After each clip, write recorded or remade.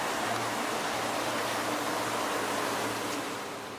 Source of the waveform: recorded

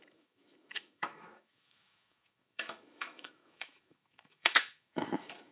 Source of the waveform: remade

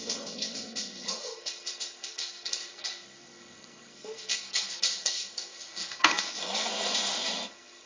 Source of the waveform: remade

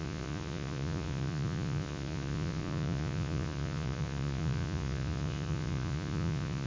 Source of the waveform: remade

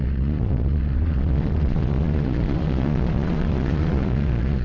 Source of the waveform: remade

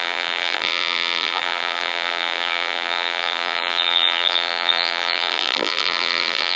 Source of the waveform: remade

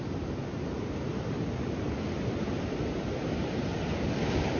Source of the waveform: recorded